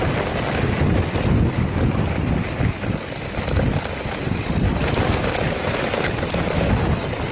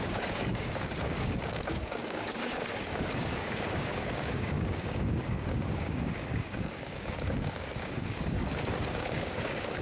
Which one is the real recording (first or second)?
first